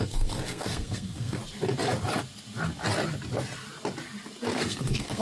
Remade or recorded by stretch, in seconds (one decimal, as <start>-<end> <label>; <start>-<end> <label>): 0.0-1.4 remade; 1.4-4.5 recorded; 4.5-5.2 remade